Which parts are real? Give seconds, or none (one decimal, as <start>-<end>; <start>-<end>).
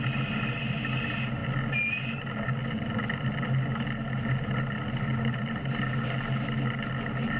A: 0.0-7.4